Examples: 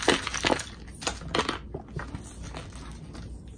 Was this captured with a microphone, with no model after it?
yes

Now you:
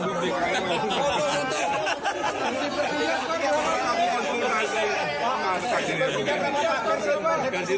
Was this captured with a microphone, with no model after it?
yes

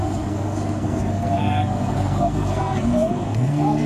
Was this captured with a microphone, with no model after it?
no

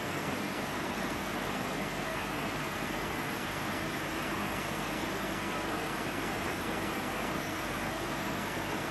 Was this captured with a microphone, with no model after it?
no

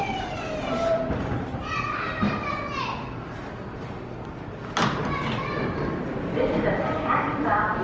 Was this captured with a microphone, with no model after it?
yes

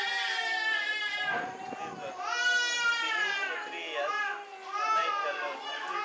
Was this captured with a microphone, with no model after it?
yes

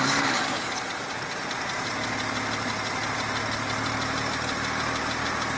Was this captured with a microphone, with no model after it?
yes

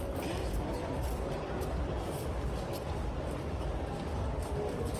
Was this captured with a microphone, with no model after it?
yes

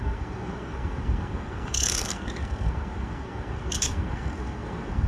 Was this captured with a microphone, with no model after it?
no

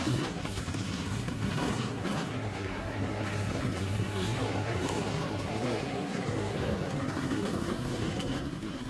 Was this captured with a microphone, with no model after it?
no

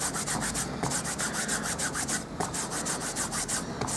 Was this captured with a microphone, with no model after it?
yes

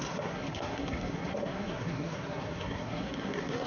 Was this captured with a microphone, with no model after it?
no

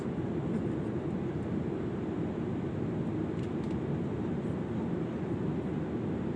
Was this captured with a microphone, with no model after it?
yes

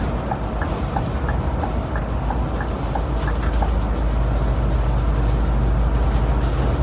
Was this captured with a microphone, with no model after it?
yes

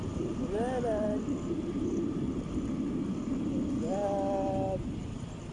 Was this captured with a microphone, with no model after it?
yes